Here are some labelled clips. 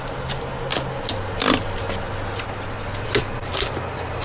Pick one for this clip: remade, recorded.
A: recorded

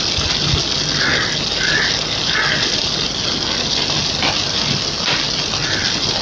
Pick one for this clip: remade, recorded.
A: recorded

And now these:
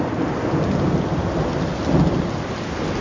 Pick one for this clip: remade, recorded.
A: recorded